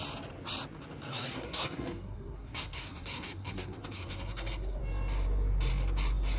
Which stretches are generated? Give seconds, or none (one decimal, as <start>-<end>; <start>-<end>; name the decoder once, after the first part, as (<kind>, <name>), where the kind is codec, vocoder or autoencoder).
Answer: 1.1-4.8 (codec, SNAC)